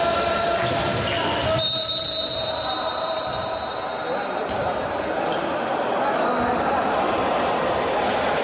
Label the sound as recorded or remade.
recorded